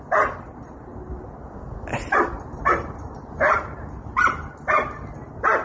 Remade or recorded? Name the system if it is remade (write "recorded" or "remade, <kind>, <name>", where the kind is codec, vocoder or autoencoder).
recorded